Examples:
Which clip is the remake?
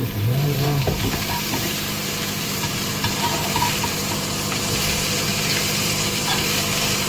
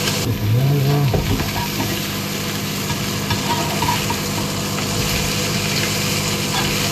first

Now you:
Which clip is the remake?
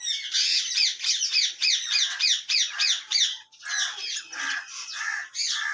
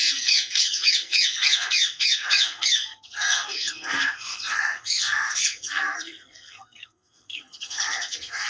second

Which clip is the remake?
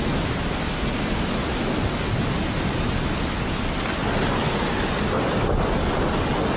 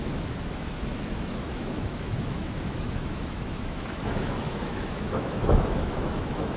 second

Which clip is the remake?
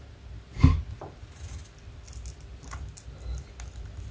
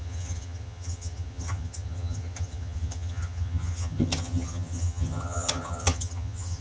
second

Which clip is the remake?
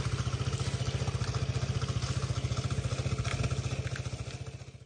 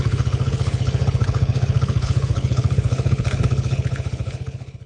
second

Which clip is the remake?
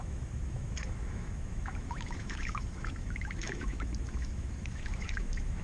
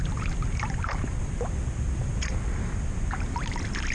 first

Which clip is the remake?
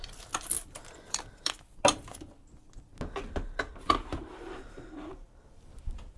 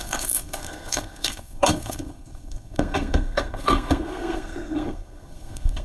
second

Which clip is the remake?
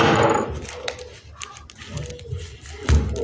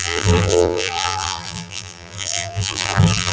second